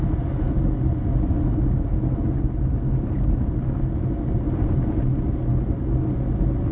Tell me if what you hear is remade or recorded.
recorded